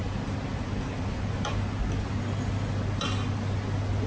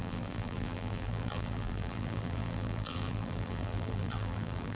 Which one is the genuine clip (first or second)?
first